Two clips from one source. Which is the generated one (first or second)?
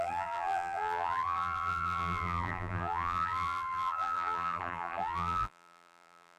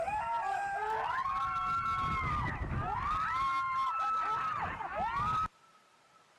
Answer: first